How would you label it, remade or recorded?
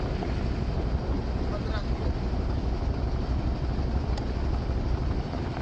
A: recorded